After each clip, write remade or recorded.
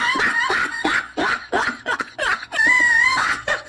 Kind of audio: remade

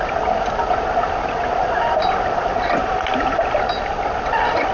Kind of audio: recorded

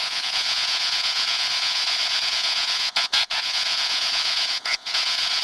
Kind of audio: remade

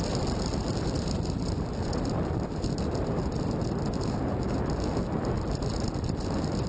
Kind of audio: recorded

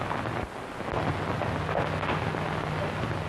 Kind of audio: recorded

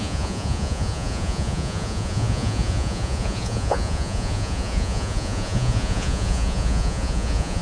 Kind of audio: remade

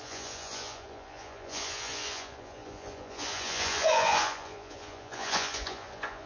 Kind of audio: remade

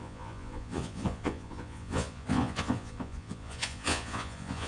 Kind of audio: remade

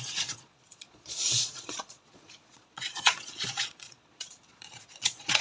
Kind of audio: remade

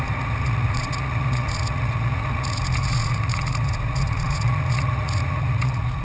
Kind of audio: remade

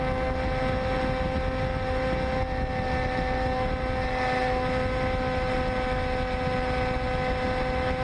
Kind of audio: recorded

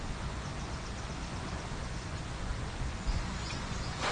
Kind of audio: remade